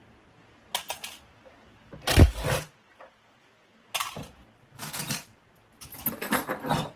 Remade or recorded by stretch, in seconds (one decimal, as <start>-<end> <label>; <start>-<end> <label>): 0.0-7.0 recorded